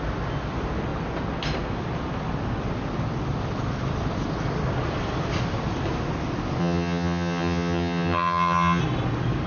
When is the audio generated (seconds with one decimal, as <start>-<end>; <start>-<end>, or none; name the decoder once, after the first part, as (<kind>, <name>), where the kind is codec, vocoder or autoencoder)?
6.6-8.8 (vocoder, HiFi-GAN)